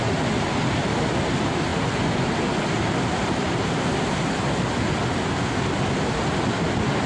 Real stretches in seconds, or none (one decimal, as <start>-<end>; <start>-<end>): 0.0-7.1